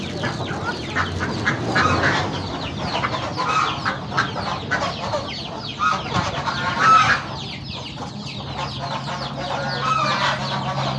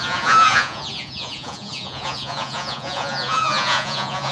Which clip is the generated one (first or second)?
second